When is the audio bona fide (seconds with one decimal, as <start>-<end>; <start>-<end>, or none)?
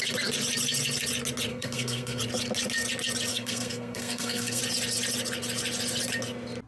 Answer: 0.0-1.5; 2.2-3.3; 4.6-6.7